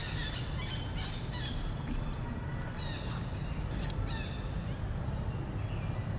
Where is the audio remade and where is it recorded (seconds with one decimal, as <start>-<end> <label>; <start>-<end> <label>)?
0.0-6.2 recorded